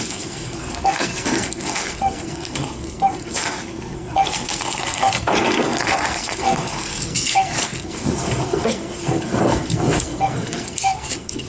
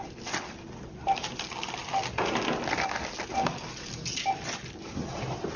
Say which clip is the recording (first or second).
second